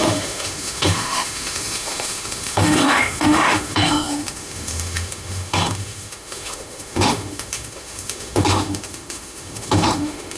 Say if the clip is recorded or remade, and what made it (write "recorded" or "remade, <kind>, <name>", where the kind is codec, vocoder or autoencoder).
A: remade, autoencoder, DAC-VAE